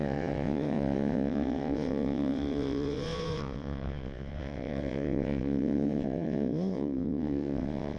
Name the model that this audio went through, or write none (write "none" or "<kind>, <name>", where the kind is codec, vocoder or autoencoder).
vocoder, WaveNeXt